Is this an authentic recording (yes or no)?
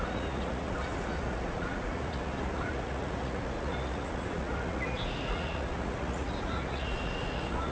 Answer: no